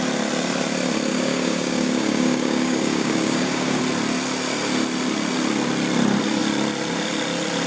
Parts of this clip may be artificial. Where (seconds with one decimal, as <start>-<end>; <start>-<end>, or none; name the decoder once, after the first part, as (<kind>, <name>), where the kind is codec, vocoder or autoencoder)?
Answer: 1.1-3.8 (codec, DAC)